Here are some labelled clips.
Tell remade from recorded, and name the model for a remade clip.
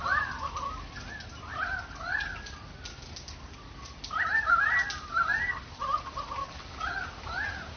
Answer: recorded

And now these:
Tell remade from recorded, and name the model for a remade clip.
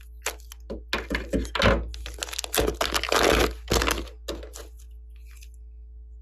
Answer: recorded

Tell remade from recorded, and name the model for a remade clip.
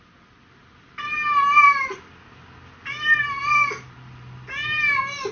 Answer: recorded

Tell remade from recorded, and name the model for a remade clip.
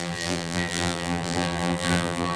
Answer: remade, vocoder, BigVGAN v2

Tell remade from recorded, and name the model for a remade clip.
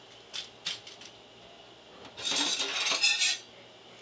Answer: recorded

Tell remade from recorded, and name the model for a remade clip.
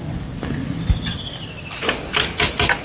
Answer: recorded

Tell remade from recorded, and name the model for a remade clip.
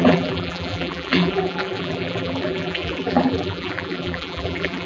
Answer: remade, vocoder, BigVGAN v2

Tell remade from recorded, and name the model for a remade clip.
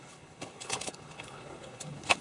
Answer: remade, codec, HILCodec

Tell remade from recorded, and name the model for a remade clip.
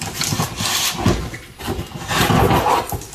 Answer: recorded